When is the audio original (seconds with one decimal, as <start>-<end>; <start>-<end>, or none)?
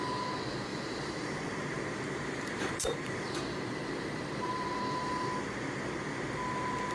0.0-0.7; 4.8-6.9